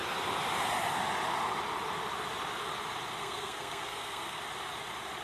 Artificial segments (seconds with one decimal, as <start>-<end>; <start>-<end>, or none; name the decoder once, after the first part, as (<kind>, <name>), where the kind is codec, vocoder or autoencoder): 3.2-4.4 (codec, SNAC)